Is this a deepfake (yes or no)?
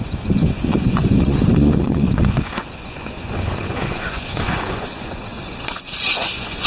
yes